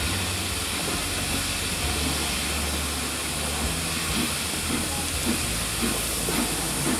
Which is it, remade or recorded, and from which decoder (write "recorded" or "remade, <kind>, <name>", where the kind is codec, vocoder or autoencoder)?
recorded